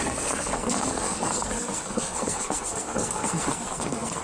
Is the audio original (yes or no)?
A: no